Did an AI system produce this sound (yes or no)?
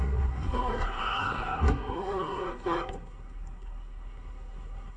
yes